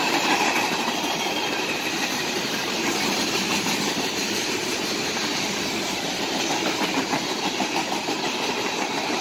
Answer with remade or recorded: remade